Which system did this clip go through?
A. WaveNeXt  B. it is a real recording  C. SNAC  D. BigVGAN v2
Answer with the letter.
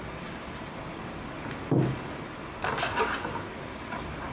B